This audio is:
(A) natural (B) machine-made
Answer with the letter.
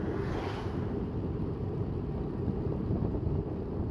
A